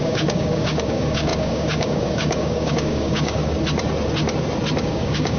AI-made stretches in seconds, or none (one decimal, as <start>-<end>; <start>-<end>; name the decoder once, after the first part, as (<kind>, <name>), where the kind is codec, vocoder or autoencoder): 0.0-3.4 (codec, DAC); 4.8-5.4